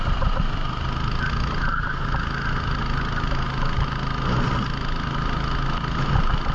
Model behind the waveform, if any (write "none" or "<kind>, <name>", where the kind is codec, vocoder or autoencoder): none